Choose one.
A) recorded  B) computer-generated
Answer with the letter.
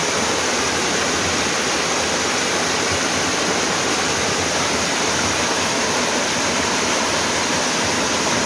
A